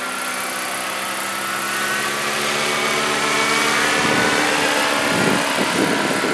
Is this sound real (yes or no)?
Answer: yes